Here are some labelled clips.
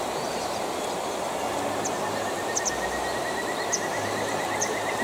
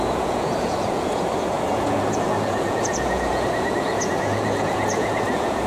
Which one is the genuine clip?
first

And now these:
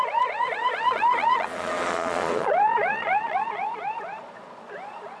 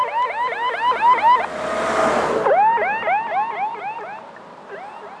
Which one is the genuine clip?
second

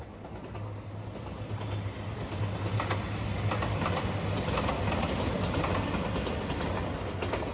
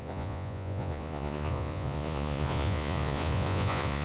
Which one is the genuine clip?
first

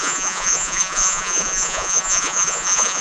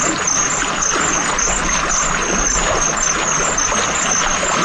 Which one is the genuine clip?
second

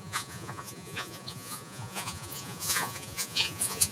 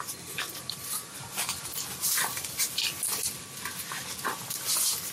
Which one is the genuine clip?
second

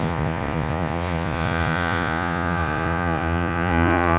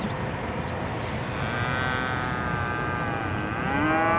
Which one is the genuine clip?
second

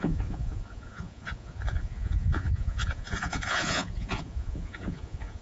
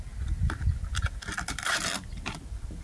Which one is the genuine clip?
second